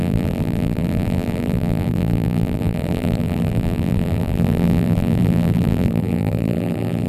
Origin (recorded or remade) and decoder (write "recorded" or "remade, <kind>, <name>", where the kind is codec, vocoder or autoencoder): remade, vocoder, BigVGAN v2